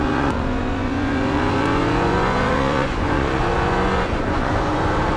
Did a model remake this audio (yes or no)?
yes